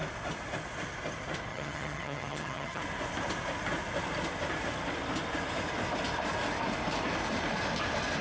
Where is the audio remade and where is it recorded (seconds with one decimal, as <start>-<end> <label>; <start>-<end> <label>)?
0.0-1.5 recorded; 1.5-2.8 remade; 2.8-8.2 recorded